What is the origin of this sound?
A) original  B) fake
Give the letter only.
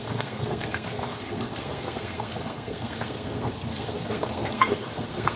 B